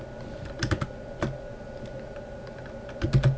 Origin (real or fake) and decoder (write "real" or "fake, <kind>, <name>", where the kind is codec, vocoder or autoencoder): real